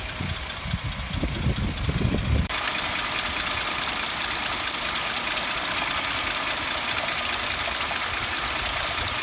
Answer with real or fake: real